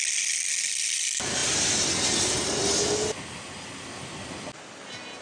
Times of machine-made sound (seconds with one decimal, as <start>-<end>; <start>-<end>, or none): none